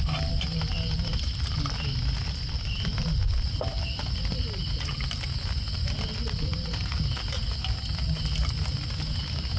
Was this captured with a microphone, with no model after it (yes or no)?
yes